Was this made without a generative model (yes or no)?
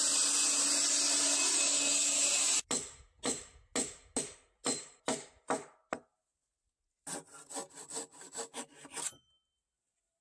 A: yes